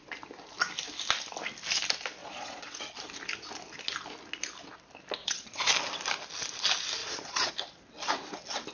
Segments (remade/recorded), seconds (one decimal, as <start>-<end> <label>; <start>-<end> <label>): 0.0-2.2 recorded; 2.2-2.9 remade; 2.9-5.2 recorded; 5.2-5.7 remade; 5.7-7.0 recorded; 7.0-7.5 remade; 7.5-8.7 recorded